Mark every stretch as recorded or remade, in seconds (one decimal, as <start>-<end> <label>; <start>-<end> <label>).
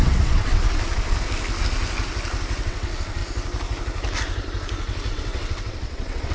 0.0-0.6 remade; 0.6-2.6 recorded; 2.6-3.2 remade; 3.2-5.1 recorded; 5.1-6.3 remade